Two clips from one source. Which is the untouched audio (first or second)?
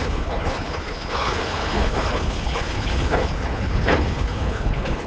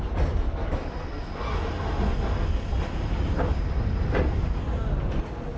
second